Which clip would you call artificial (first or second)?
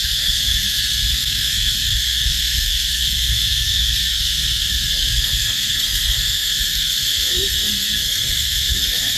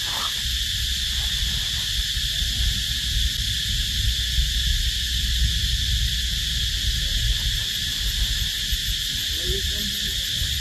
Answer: first